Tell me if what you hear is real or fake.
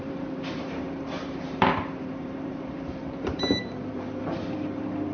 fake